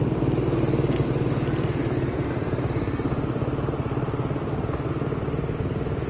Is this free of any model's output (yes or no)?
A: yes